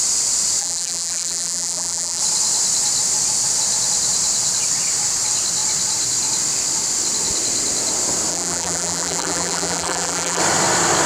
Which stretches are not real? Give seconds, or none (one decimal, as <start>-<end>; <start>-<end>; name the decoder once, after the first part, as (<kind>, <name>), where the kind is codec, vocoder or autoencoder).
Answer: 0.6-2.2 (vocoder, BigVGAN v2); 8.3-10.4

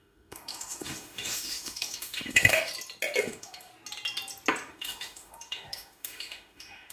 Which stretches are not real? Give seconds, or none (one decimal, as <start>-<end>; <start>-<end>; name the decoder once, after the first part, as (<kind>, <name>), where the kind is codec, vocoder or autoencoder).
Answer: 0.0-2.7 (autoencoder, DAC-VAE); 3.2-3.7; 4.7-6.9

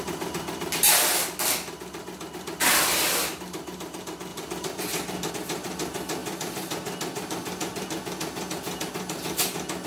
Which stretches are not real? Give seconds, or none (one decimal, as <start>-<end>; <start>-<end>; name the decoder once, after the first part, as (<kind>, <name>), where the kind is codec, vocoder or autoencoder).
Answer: 4.3-5.3 (vocoder, BigVGAN v2); 6.2-8.9

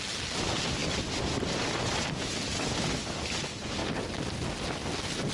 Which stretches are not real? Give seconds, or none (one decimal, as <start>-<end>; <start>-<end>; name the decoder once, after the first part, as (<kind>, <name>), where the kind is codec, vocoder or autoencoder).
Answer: none

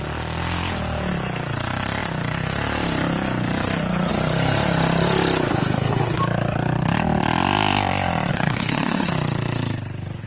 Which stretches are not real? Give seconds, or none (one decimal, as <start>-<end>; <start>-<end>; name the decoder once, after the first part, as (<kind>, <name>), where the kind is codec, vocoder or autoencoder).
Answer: 5.5-6.2 (codec, SNAC); 8.3-9.1

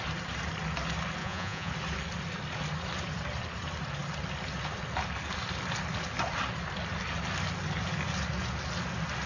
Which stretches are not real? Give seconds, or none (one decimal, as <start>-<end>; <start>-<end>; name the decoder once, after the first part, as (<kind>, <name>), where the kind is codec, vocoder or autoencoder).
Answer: 1.2-1.7 (vocoder, Vocos)

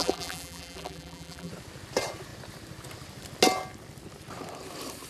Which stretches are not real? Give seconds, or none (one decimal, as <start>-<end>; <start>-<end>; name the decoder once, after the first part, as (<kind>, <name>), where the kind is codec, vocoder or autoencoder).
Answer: 0.0-1.5 (vocoder, BigVGAN v2)